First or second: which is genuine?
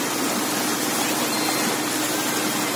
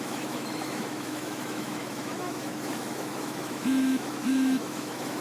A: first